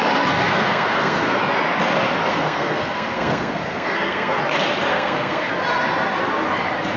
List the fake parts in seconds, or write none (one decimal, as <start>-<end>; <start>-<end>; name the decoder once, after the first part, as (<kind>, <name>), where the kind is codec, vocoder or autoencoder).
0.5-1.4 (codec, SNAC); 2.3-4.4; 4.9-5.5

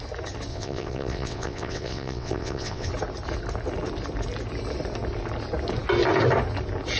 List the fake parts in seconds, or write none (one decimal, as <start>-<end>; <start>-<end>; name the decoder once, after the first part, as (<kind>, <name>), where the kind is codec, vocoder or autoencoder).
0.5-2.9 (vocoder, WaveNeXt)

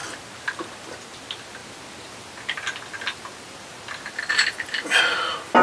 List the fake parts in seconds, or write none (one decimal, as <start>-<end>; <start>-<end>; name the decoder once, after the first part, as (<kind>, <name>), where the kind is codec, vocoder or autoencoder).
none